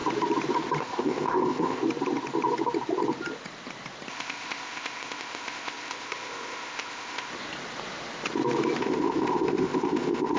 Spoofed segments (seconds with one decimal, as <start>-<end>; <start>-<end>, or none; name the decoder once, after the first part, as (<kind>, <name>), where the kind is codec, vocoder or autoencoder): 0.8-1.8 (codec, ZipCodec); 4.1-7.3; 8.8-10.4